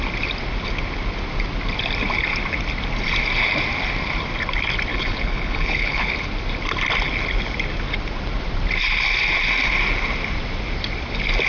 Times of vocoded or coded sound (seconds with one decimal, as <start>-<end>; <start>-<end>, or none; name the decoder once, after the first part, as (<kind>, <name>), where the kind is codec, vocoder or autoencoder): 4.9-6.1 (codec, HILCodec)